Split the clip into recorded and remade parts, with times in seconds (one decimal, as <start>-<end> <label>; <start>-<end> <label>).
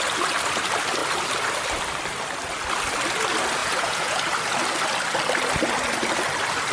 0.0-3.6 recorded; 3.6-4.2 remade; 4.2-6.7 recorded